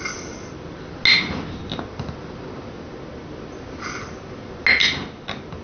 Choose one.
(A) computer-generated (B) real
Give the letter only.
B